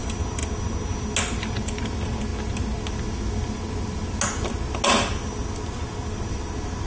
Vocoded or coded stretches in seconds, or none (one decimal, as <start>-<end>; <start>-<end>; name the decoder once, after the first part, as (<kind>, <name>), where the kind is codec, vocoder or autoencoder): none